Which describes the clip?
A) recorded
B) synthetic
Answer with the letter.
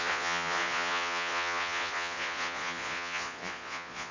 B